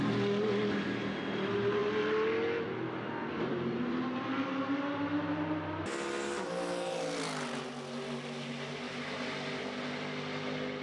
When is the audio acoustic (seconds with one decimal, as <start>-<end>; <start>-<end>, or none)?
0.0-10.8